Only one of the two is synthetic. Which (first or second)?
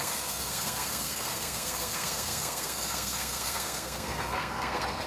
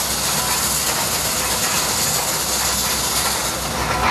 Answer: first